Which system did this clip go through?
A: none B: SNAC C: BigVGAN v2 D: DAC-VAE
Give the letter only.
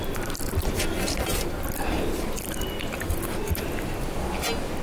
A